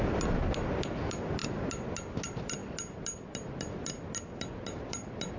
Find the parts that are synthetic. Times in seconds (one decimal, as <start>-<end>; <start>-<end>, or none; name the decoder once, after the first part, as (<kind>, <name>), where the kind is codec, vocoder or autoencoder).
none